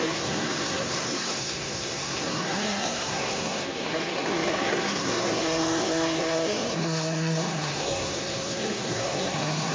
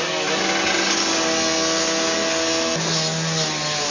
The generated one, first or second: first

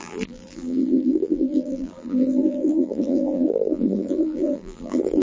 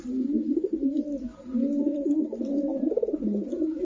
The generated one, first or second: first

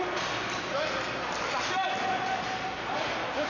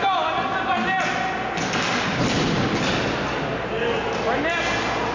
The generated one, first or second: first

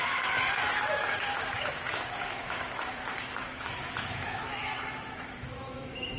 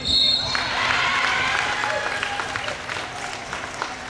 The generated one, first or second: first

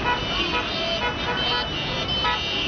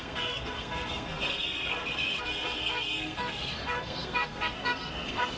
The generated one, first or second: second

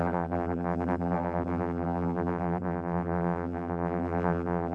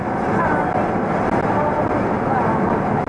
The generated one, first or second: first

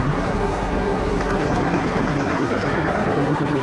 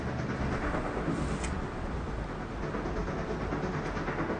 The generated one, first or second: first